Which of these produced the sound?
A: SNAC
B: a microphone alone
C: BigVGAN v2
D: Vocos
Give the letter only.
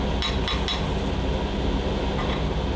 B